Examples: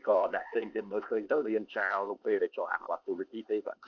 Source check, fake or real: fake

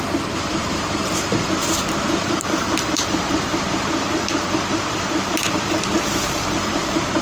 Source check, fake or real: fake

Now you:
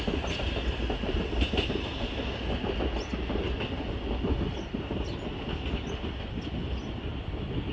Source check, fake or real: real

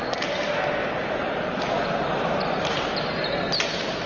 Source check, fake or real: real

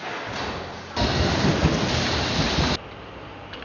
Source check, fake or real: real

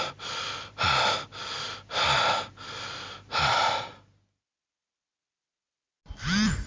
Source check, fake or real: real